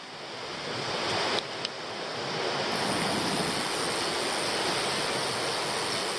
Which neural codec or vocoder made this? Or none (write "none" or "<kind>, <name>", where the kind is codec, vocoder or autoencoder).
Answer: none